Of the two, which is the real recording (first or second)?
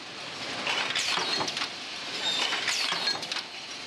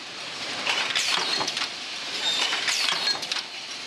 first